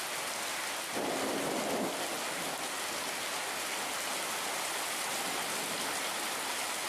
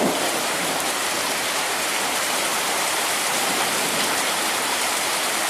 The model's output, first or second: second